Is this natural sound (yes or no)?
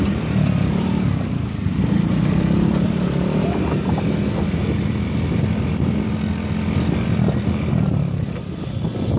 yes